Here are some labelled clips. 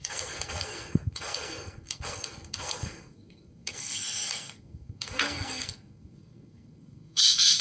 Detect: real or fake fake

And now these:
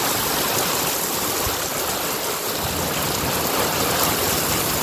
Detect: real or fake real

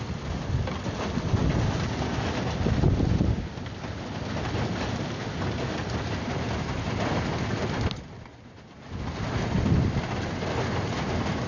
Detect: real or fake real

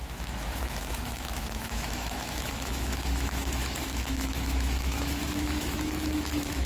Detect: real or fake fake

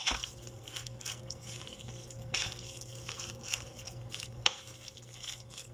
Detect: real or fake fake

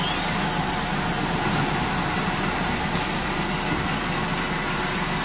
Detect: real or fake real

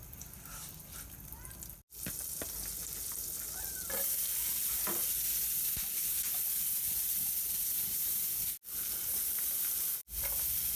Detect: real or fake real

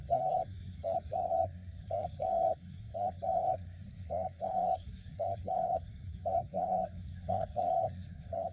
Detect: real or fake fake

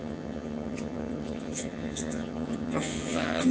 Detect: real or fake fake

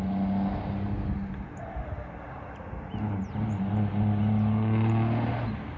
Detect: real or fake real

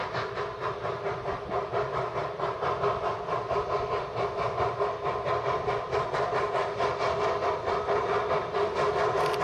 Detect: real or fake real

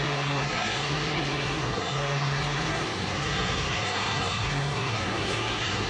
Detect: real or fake fake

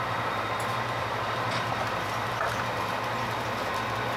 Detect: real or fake real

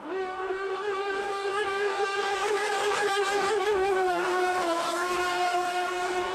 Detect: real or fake fake